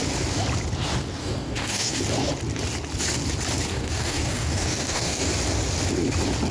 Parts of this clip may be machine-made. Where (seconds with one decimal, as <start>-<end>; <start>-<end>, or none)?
1.2-2.0; 3.7-5.3